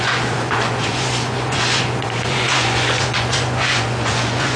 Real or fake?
fake